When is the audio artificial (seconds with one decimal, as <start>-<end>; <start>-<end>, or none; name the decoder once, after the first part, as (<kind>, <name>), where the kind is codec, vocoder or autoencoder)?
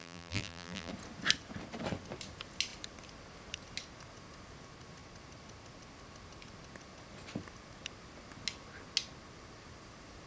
0.0-0.9 (vocoder, BigVGAN v2)